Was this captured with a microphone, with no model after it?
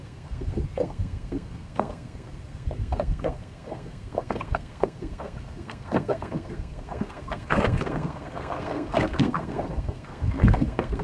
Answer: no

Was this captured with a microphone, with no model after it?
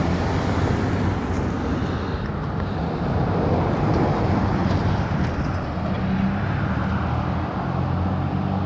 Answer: yes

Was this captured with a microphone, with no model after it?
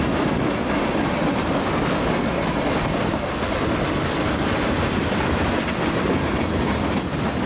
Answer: yes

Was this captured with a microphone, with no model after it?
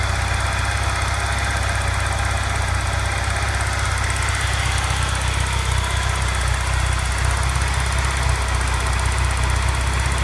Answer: yes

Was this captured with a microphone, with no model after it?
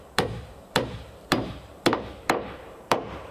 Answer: no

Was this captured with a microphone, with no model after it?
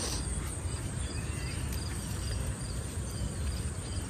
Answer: yes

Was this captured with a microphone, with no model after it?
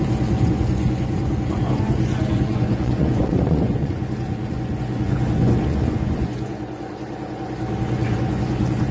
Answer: no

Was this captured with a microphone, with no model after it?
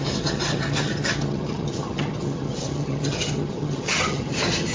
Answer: no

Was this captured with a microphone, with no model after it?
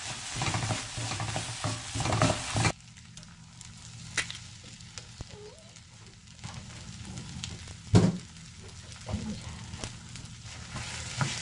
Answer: yes